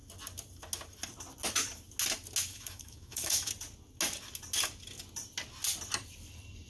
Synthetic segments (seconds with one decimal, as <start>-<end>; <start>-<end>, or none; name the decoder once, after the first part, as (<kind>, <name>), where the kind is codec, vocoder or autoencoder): 2.5-3.5 (autoencoder, DAC-VAE)